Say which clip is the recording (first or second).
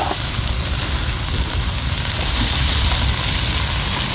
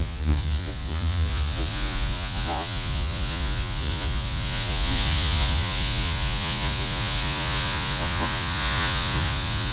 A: first